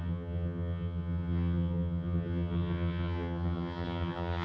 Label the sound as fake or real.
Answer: fake